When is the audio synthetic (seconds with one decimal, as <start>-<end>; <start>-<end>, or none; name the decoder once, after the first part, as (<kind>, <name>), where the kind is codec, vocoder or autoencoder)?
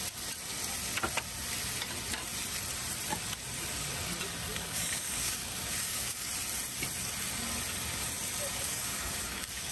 4.5-6.3 (codec, DAC); 8.5-9.7